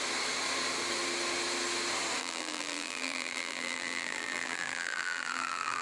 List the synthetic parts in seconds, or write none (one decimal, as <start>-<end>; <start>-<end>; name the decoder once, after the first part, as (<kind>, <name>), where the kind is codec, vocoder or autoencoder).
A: 2.2-5.8 (vocoder, BigVGAN v2)